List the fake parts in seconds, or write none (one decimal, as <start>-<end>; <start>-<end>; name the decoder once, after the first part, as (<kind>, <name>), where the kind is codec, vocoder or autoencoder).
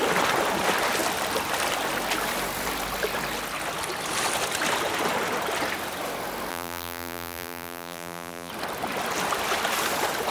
6.5-8.5 (vocoder, BigVGAN v2)